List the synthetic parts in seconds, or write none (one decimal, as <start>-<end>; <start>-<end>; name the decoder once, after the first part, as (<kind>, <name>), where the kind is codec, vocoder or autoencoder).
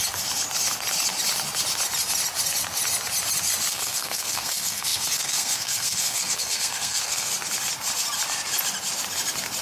3.7-7.3 (codec, SNAC)